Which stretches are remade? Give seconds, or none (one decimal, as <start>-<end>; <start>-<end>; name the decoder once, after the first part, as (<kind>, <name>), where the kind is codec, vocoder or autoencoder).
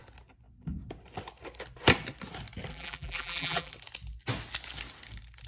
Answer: 2.7-3.7 (vocoder, BigVGAN v2)